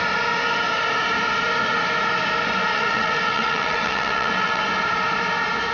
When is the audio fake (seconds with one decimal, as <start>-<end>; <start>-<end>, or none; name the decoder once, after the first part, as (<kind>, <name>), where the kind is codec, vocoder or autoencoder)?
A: 2.7-4.6 (vocoder, WaveNeXt)